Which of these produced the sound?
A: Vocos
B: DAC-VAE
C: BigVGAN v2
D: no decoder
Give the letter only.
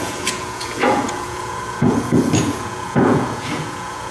A